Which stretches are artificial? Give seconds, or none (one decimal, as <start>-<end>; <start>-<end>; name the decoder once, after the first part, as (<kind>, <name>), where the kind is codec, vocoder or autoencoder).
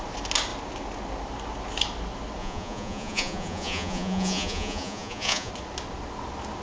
2.4-5.5 (vocoder, Vocos)